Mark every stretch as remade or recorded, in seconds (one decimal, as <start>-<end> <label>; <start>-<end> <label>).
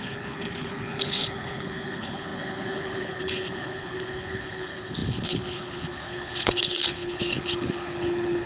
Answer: 0.0-8.5 remade